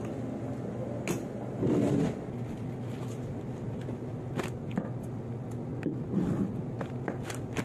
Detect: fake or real real